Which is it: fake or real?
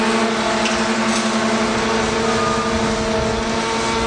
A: real